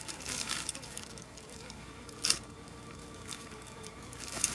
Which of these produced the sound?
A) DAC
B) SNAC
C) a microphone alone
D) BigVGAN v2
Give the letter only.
A